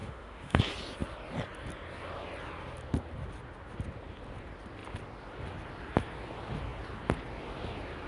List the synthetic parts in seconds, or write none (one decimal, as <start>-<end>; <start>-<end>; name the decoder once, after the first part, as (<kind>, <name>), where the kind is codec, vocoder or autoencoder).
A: 0.0-0.6 (autoencoder, DAC-VAE)